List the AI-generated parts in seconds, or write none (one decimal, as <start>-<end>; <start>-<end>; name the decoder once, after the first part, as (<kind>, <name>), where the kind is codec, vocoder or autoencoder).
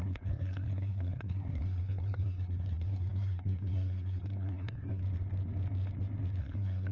0.0-5.0 (codec, SNAC); 6.4-6.9